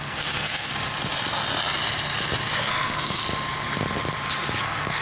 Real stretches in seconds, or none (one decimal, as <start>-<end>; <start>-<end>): 0.7-2.6; 3.2-4.6

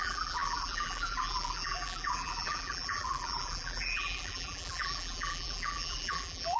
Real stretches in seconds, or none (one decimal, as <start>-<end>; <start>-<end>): none

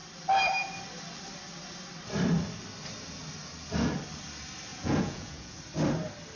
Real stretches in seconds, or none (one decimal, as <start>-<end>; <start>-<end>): 0.0-4.7; 5.6-6.4

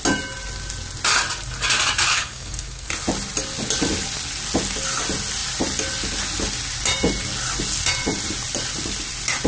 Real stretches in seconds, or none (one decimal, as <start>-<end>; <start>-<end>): 0.0-2.1; 2.9-9.5

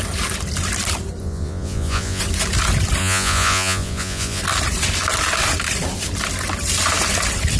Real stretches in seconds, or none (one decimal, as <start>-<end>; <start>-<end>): 0.0-1.2; 2.2-3.0; 4.4-7.6